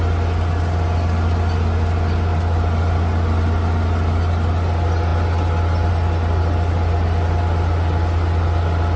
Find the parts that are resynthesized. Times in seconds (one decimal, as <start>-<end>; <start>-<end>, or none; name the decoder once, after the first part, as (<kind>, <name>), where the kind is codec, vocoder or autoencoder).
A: none